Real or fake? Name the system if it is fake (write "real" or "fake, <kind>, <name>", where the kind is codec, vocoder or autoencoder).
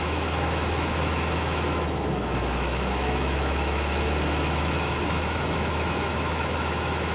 fake, autoencoder, DAC-VAE